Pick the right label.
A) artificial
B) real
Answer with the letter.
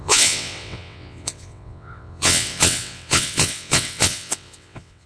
A